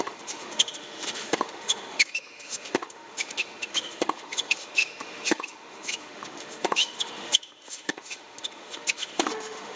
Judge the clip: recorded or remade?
remade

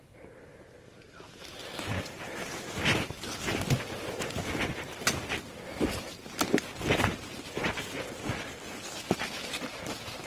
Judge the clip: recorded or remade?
recorded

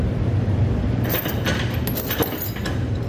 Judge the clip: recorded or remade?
recorded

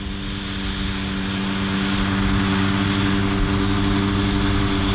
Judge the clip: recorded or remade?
recorded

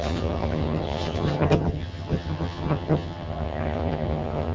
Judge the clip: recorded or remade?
remade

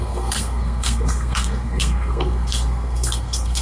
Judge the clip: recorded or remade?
remade